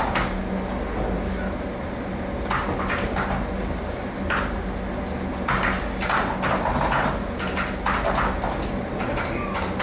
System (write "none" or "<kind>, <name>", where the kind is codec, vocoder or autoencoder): none